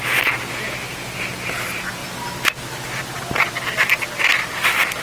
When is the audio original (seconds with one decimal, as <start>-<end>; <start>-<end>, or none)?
0.0-5.0